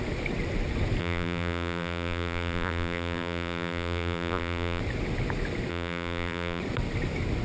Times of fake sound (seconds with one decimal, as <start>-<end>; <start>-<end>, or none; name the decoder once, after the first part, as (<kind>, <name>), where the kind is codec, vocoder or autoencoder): 1.0-4.8 (vocoder, BigVGAN v2); 5.7-6.6